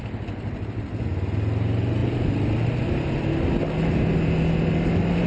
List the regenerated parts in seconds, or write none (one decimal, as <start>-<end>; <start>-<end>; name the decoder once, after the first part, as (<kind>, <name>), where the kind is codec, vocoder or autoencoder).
none